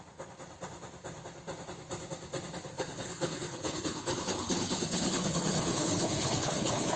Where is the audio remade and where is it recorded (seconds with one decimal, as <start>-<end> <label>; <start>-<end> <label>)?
0.0-2.7 recorded; 2.7-7.0 remade